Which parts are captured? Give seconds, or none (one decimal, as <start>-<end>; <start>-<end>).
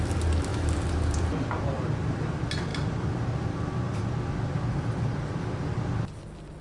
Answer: 0.0-6.6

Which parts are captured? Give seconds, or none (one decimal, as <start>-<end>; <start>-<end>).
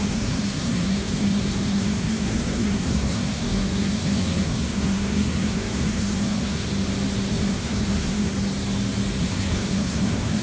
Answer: 6.7-7.3; 8.3-9.2